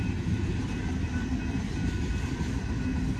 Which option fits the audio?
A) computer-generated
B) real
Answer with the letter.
B